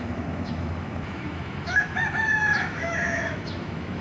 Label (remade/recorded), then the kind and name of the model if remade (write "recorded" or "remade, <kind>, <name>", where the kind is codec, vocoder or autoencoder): remade, autoencoder, DAC-VAE